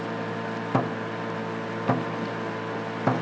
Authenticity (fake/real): real